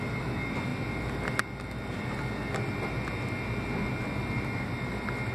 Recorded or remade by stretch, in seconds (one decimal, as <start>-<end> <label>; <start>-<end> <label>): 0.0-5.3 recorded